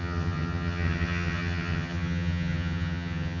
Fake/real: fake